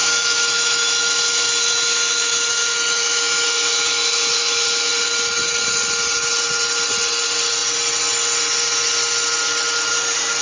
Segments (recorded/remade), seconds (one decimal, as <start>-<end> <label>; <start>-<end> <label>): 0.0-4.9 remade; 4.9-10.4 recorded